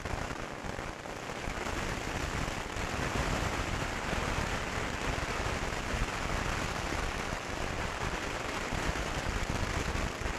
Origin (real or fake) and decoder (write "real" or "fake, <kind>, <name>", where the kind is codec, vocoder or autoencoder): real